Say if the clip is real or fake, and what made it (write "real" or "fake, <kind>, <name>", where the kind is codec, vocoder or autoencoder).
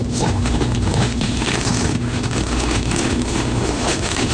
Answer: fake, autoencoder, DAC-VAE